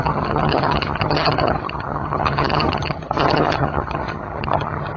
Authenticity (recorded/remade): remade